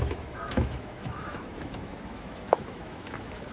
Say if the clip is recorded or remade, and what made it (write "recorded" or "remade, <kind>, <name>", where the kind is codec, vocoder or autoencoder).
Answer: remade, autoencoder, DAC-VAE